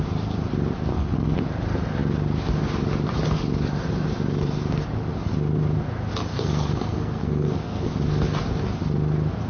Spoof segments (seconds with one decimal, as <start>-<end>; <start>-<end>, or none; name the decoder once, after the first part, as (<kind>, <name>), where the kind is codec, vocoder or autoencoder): 0.9-1.4 (codec, SNAC); 6.3-7.9